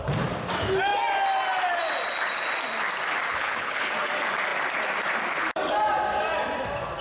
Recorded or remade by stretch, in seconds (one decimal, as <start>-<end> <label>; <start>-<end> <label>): 0.0-3.3 recorded; 3.3-3.9 remade; 3.9-7.0 recorded